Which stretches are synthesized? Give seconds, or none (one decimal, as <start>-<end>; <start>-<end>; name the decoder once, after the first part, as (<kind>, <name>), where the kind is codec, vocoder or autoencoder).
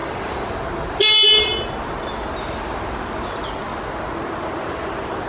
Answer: none